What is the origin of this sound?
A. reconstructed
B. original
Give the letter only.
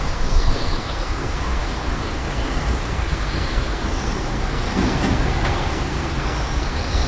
A